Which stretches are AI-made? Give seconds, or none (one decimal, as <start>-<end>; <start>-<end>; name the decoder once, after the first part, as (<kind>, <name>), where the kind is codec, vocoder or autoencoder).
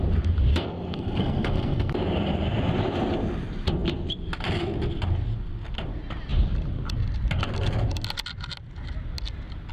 0.5-1.9 (codec, SNAC)